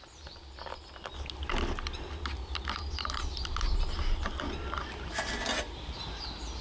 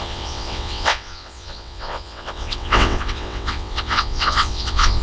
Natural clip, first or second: first